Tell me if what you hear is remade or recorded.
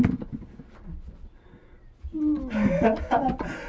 recorded